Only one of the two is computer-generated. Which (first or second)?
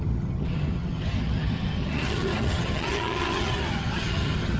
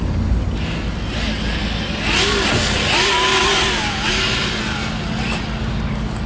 first